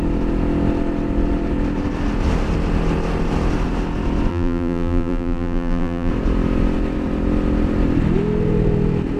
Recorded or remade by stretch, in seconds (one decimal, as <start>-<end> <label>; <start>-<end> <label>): 0.0-4.3 recorded; 4.3-6.1 remade; 6.1-9.2 recorded